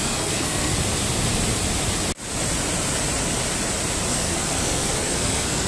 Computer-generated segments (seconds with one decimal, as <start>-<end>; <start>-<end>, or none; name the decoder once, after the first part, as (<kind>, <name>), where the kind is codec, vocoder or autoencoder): 0.0-0.7 (codec, SNAC); 4.1-5.7